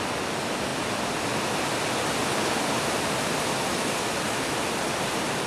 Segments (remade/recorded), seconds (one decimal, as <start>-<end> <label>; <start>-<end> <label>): 0.0-5.5 recorded